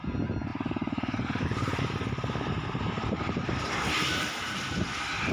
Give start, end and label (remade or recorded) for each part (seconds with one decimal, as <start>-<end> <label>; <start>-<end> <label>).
0.0-0.5 recorded; 0.5-3.7 remade; 3.7-5.3 recorded